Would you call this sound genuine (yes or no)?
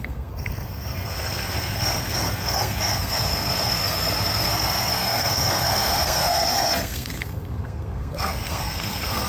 no